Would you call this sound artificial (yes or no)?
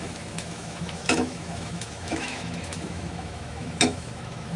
yes